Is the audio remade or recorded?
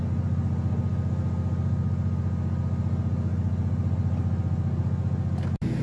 recorded